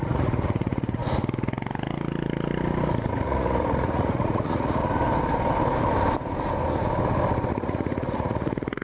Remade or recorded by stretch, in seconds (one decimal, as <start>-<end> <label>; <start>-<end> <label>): 0.0-1.0 remade; 1.0-3.1 recorded; 3.1-4.8 remade; 4.8-7.5 recorded; 7.5-8.8 remade